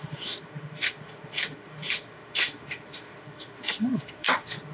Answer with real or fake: fake